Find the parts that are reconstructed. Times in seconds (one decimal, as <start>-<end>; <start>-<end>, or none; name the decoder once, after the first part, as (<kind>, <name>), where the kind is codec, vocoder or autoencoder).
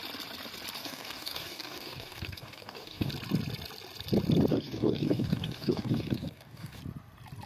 0.8-3.1 (codec, DAC); 4.5-6.8